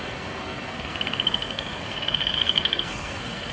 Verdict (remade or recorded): remade